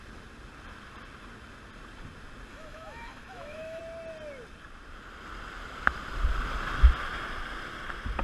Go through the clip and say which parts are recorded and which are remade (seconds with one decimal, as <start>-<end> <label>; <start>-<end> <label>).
0.0-2.5 recorded; 2.5-3.8 remade; 3.8-8.2 recorded